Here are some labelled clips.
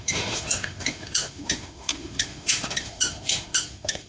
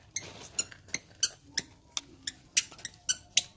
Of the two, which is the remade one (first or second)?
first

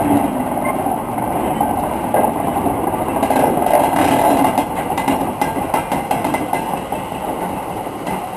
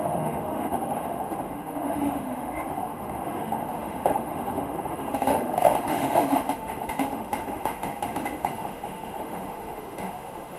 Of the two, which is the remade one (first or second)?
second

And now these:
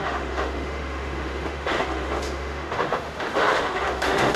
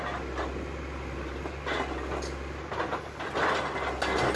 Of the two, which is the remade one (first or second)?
first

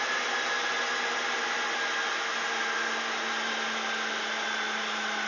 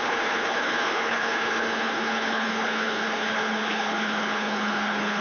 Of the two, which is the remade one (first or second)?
second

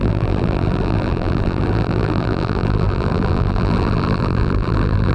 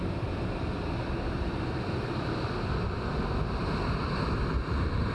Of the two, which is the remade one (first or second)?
first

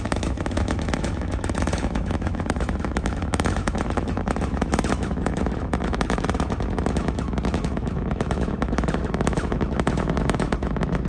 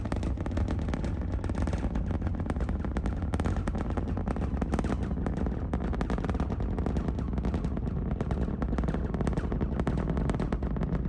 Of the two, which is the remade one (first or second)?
first